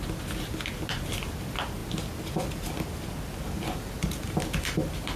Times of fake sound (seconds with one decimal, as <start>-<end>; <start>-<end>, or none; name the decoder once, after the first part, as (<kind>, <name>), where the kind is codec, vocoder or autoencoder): none